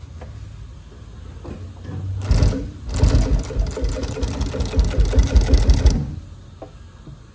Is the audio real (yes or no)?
yes